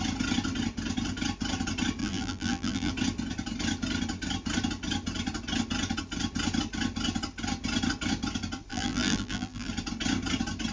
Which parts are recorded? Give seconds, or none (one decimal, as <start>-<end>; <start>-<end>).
0.0-2.0; 2.9-8.7; 9.7-10.7